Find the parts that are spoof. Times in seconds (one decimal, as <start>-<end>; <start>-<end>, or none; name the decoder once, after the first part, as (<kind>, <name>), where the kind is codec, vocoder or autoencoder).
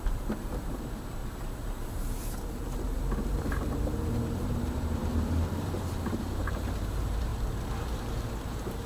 0.0-7.3 (vocoder, BigVGAN v2); 7.8-8.9